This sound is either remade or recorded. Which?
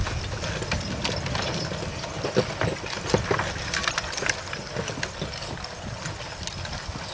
recorded